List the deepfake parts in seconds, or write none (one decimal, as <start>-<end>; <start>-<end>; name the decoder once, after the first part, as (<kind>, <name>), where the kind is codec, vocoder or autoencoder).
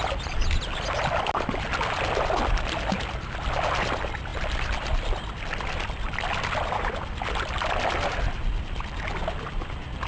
none